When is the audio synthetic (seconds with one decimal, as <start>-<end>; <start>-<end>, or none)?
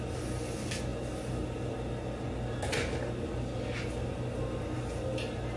none